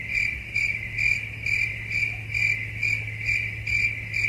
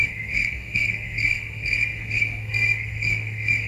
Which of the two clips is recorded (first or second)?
first